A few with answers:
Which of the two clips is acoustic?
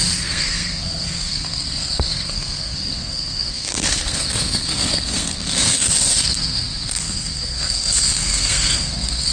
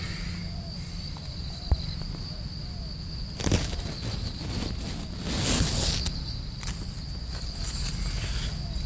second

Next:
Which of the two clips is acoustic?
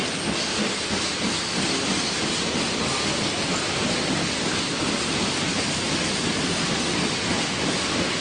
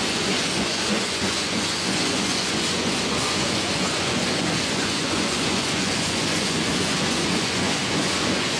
first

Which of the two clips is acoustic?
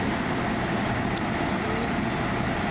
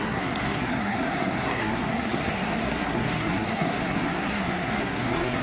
first